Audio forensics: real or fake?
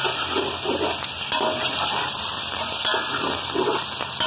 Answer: real